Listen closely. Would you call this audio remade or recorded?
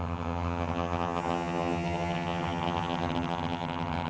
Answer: remade